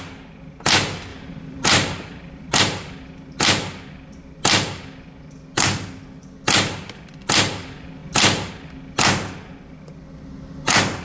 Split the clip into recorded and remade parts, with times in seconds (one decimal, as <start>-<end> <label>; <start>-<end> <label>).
0.0-1.1 recorded; 1.1-2.6 remade; 2.6-11.0 recorded